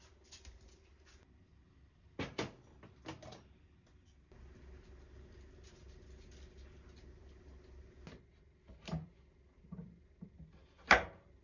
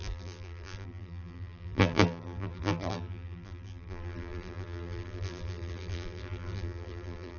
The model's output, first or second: second